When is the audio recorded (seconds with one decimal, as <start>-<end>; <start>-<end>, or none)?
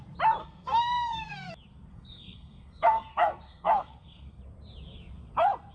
0.0-0.4; 1.5-1.9; 4.4-5.7